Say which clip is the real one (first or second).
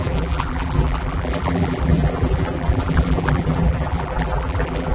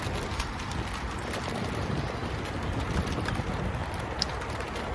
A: second